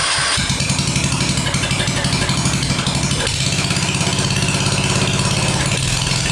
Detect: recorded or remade recorded